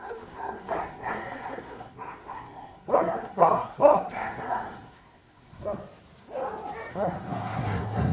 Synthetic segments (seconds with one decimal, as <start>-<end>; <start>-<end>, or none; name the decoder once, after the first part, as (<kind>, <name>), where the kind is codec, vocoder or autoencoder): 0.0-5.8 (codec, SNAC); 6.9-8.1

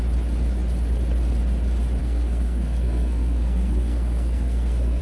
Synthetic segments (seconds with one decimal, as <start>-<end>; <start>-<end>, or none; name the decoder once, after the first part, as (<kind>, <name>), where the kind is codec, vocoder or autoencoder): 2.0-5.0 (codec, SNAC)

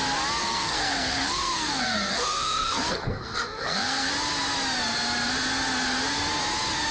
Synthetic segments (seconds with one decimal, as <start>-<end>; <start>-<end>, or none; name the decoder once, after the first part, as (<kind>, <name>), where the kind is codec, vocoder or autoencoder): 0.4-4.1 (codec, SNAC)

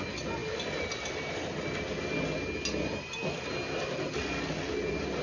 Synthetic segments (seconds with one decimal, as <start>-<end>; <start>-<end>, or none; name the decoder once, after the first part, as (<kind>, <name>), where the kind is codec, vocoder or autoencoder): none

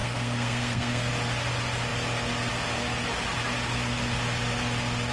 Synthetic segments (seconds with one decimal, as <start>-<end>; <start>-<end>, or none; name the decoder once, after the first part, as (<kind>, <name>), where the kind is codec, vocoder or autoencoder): 0.0-1.1 (codec, SNAC)

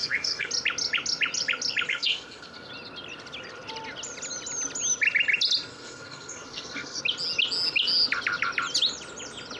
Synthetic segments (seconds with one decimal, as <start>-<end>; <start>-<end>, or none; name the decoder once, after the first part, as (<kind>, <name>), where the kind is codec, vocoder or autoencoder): 0.0-0.5 (codec, SNAC); 1.9-2.7; 5.7-7.0

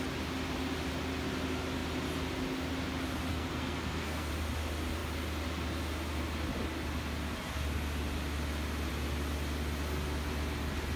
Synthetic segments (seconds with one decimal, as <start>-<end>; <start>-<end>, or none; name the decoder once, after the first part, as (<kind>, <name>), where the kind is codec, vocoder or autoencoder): 3.3-4.3 (codec, SNAC)

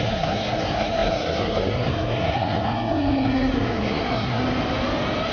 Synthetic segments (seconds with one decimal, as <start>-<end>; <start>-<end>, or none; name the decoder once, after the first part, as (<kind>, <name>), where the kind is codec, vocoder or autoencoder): 0.0-4.4 (codec, SNAC)